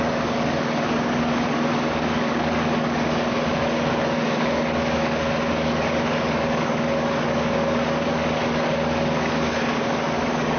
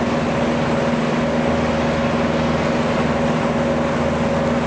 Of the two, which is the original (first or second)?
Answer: second